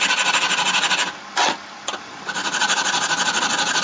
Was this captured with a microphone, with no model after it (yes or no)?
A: yes